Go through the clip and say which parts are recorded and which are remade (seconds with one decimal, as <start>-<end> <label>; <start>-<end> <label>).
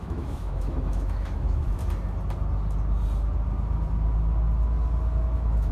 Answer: 0.0-1.8 remade; 1.8-5.2 recorded; 5.2-5.7 remade